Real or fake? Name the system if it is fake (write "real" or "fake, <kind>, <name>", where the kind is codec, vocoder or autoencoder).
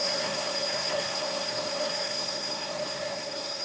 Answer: fake, codec, SNAC